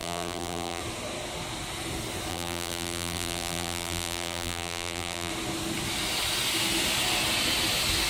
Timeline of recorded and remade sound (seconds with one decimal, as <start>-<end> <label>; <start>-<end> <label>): 0.0-0.8 remade; 0.8-2.3 recorded; 2.3-5.3 remade; 5.3-8.1 recorded

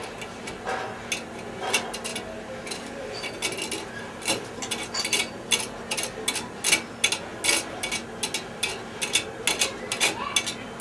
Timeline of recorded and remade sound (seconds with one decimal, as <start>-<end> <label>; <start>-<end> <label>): 0.0-10.8 recorded